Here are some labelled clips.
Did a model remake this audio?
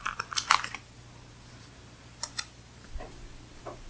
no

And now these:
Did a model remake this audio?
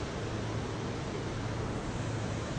no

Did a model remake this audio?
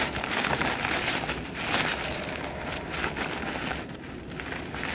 no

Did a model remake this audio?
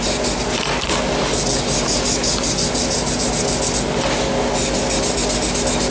no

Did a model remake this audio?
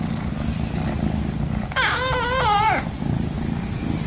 no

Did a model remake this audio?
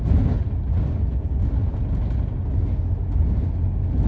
no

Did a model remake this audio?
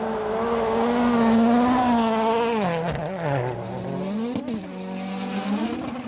no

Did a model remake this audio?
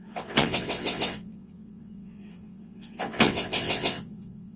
yes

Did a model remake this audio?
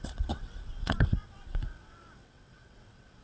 yes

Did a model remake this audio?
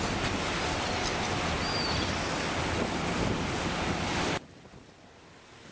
no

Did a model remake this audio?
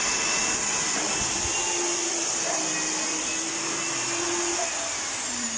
no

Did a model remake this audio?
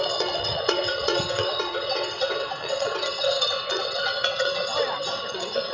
yes